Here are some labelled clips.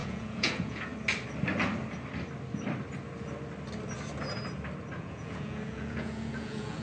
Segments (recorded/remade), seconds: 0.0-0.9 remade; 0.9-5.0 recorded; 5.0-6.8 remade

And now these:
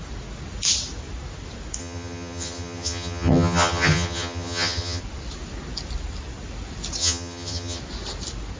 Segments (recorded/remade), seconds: 0.0-1.8 recorded; 1.8-5.0 remade; 5.0-7.0 recorded; 7.0-7.8 remade; 7.8-8.6 recorded

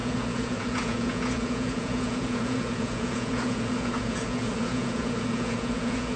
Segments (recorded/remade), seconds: 0.0-6.2 remade

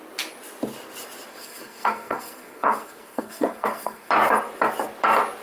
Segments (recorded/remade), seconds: 0.0-1.3 recorded; 1.3-4.1 remade; 4.1-5.4 recorded

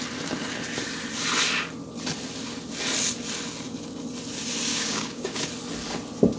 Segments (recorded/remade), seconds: 0.0-4.7 recorded; 4.7-5.4 remade; 5.4-6.4 recorded

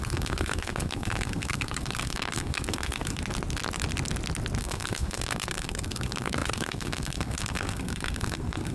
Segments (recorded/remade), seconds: 0.0-3.2 remade; 3.2-4.6 recorded; 4.6-8.7 remade

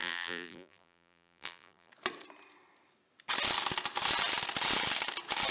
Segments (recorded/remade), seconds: 0.0-1.9 remade; 1.9-5.5 recorded

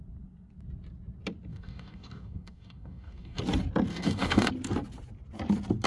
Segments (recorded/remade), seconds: 0.0-1.5 recorded; 1.5-3.4 remade; 3.4-3.9 recorded; 3.9-4.5 remade; 4.5-5.9 recorded